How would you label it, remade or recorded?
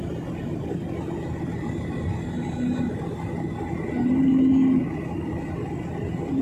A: recorded